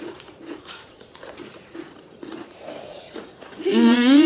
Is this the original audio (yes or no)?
no